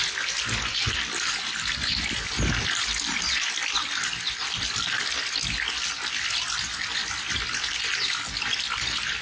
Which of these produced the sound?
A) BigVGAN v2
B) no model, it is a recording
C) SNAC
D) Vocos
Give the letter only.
B